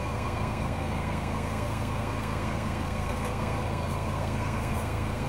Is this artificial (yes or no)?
yes